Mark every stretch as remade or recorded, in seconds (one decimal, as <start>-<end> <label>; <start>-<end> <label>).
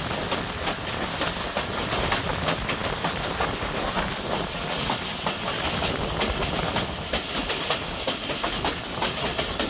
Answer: 0.0-9.7 recorded